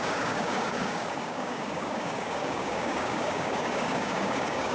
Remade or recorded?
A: remade